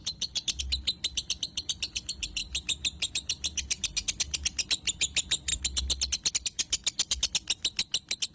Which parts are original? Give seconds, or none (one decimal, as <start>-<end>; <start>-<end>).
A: 0.0-8.3

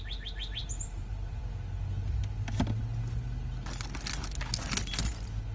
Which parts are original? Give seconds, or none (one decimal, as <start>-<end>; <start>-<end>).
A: 0.0-0.6; 1.4-5.5

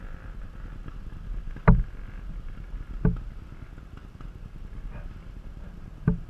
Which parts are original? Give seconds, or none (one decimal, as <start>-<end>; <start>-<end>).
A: 0.0-6.3

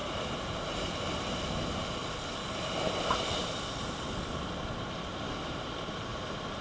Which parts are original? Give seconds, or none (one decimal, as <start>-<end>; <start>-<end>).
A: 0.0-2.0; 6.0-6.6